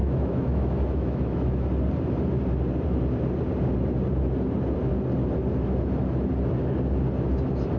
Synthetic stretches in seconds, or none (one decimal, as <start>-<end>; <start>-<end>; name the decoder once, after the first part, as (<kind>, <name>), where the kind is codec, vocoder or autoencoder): 0.0-1.7 (autoencoder, DAC-VAE)